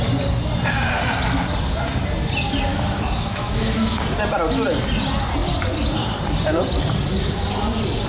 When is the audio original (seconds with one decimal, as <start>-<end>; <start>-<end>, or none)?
0.0-2.7; 4.0-8.1